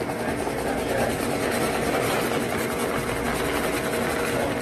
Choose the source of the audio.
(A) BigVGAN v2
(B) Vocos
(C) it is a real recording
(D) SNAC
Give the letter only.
C